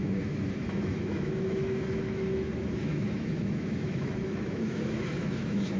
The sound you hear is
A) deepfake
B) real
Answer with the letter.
A